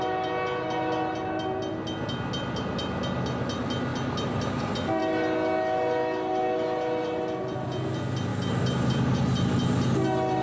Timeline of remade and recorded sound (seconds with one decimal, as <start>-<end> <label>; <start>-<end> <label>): 0.0-10.4 recorded